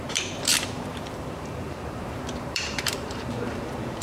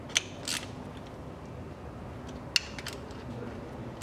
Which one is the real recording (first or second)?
second